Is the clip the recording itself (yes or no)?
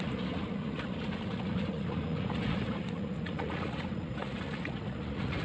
no